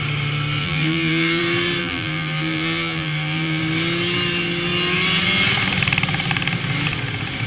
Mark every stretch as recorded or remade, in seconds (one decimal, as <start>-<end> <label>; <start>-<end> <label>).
0.0-0.6 recorded; 0.6-1.4 remade; 1.4-1.8 recorded; 1.8-3.6 remade; 3.6-7.5 recorded